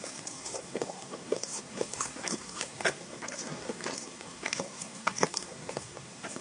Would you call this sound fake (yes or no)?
yes